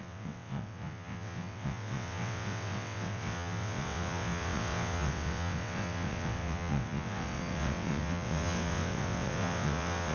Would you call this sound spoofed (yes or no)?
yes